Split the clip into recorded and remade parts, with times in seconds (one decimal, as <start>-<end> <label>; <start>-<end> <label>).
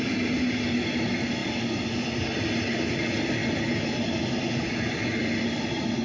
0.0-5.2 recorded; 5.2-6.0 remade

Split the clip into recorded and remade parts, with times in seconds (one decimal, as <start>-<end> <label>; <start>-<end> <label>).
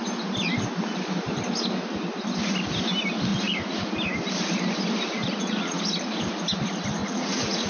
0.0-3.3 recorded; 3.3-3.9 remade; 3.9-5.2 recorded; 5.2-5.8 remade; 5.8-7.0 recorded; 7.0-7.7 remade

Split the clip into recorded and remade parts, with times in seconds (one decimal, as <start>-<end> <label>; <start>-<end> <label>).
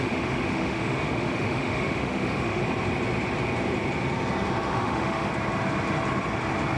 0.0-2.6 remade; 2.6-4.7 recorded; 4.7-5.3 remade; 5.3-6.8 recorded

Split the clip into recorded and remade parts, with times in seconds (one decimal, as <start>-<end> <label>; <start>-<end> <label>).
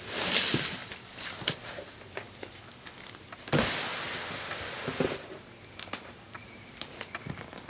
0.0-6.4 recorded; 6.4-7.0 remade; 7.0-7.7 recorded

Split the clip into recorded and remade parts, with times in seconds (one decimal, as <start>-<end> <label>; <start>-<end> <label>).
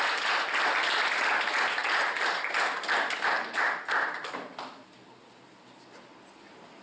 0.0-6.8 recorded